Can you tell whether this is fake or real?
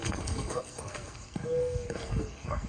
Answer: fake